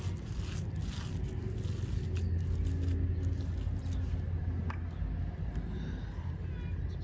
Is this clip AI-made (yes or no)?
no